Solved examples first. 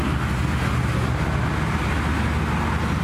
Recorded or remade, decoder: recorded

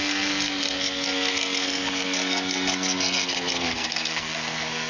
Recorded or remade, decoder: remade, codec, SNAC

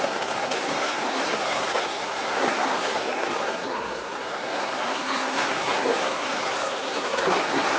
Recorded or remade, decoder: remade, codec, SNAC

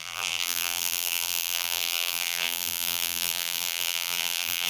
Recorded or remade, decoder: remade, vocoder, BigVGAN v2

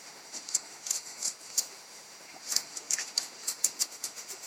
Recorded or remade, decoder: remade, autoencoder, DAC-VAE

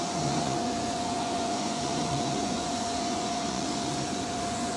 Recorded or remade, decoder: remade, vocoder, Vocos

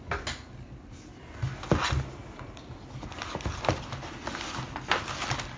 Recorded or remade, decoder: recorded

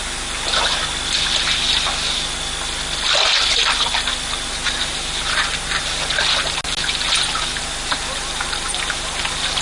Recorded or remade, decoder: recorded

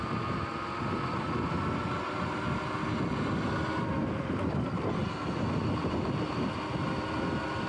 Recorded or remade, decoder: recorded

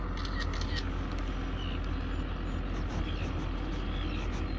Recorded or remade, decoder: recorded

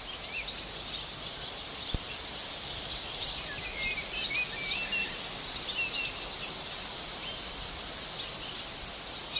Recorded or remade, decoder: recorded